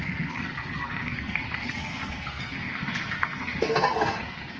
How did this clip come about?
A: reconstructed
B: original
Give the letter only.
A